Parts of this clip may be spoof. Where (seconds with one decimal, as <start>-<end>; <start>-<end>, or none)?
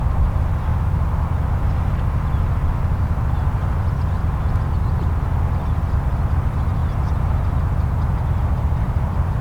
0.0-0.7; 3.0-4.2; 5.7-6.8; 8.1-9.4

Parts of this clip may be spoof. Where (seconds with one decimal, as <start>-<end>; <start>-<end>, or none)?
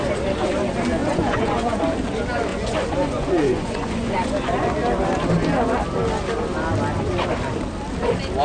1.0-1.8; 2.5-4.3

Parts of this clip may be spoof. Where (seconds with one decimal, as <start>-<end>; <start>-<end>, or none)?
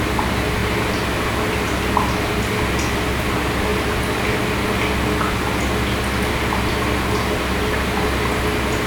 none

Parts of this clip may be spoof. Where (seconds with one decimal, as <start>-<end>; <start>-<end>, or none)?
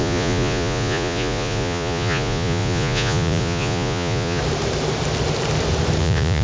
0.0-4.4; 6.0-6.4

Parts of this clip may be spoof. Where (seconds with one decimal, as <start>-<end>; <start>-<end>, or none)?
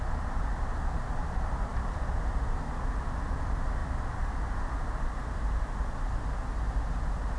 1.7-2.3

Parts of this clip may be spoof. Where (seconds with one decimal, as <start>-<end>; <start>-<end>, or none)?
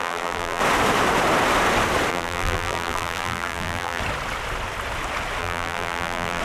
0.0-0.6; 2.1-4.0; 5.4-6.4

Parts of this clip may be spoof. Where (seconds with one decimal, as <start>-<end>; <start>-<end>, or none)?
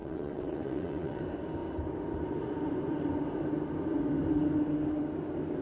0.0-1.2